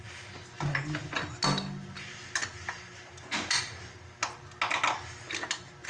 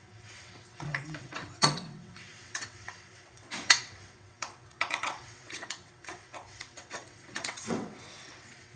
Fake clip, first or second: second